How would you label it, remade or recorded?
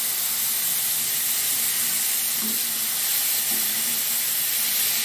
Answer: recorded